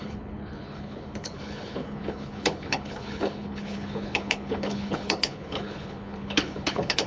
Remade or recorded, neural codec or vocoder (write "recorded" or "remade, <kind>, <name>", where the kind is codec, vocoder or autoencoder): remade, codec, HILCodec